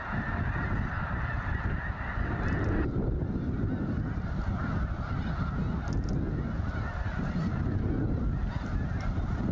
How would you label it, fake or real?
real